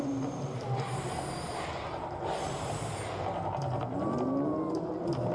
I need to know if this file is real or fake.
real